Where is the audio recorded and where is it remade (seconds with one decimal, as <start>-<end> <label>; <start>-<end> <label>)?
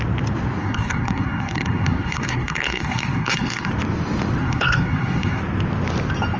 0.0-0.6 recorded; 0.6-3.7 remade; 3.7-4.4 recorded; 4.4-5.4 remade; 5.4-6.4 recorded